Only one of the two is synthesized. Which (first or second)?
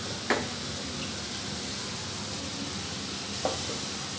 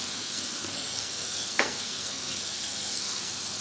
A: second